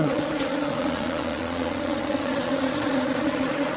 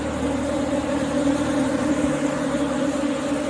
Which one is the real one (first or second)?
second